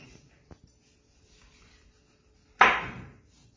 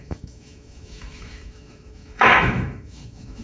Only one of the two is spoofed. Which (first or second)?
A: second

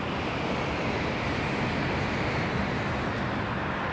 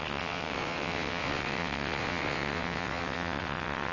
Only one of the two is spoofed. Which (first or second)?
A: second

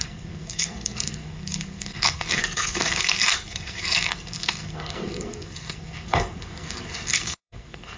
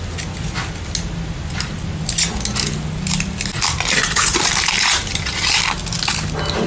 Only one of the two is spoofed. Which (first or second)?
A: first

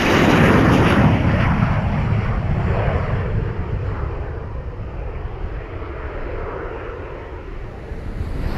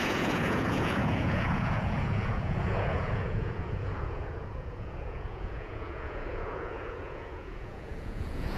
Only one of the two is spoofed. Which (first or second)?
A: second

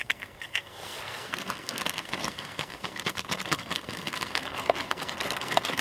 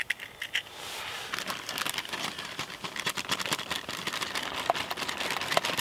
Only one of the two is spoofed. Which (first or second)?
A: first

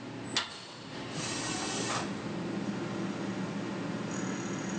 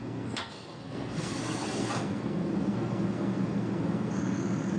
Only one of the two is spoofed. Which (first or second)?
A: second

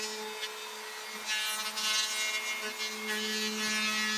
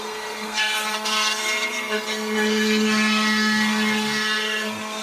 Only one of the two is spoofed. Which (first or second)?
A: second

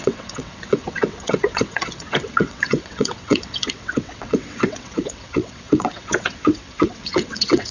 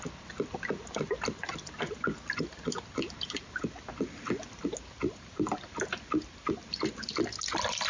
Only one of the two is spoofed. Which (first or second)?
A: first